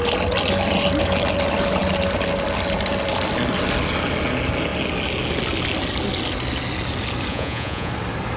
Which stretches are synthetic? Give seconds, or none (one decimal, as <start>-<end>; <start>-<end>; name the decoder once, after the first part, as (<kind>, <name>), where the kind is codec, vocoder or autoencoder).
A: 7.3-7.9 (vocoder, Vocos)